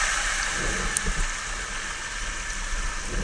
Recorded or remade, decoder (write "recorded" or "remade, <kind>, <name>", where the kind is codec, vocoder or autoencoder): recorded